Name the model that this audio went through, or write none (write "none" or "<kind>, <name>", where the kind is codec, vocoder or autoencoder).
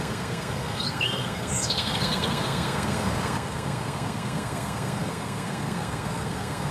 codec, SNAC